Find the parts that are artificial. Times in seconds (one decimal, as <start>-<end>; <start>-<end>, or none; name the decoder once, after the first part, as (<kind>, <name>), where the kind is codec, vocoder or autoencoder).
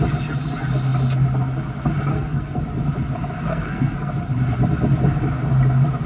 2.1-2.6 (codec, SNAC); 3.5-4.1